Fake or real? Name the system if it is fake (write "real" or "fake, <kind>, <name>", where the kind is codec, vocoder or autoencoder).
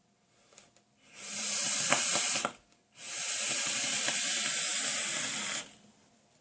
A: real